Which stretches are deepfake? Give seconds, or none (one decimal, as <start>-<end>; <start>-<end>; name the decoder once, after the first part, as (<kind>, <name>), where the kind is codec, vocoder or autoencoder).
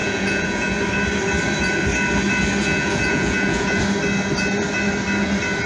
0.0-0.7 (vocoder, Vocos); 2.6-3.8